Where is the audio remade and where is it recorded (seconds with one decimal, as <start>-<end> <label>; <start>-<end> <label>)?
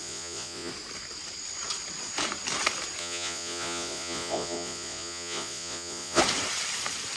0.0-0.7 remade; 0.7-3.0 recorded; 3.0-6.2 remade; 6.2-7.2 recorded